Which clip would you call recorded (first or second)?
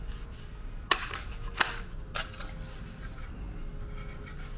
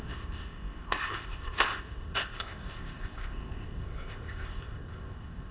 first